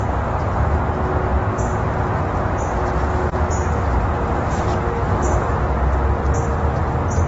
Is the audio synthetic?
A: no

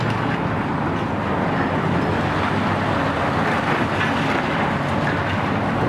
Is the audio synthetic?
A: no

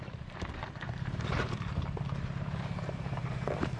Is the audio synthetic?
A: yes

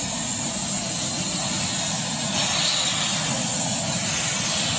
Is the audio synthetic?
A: no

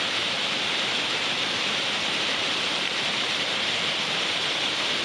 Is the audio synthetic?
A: yes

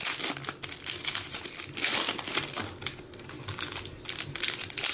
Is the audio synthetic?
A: no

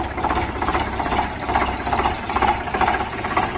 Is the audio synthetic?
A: yes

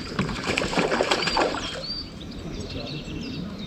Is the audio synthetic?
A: yes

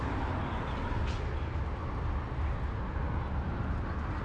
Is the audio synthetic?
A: no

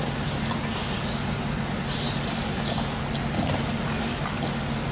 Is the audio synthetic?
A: no